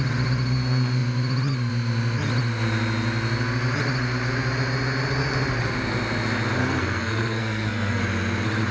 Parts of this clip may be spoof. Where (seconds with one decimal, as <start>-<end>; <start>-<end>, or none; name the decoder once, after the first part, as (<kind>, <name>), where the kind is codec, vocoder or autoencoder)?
6.6-8.0 (codec, SNAC)